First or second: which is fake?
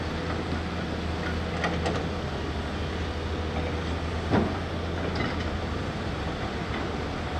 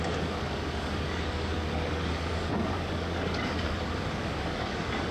second